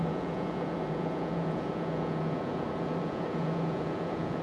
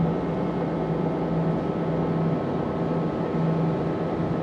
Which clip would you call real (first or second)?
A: second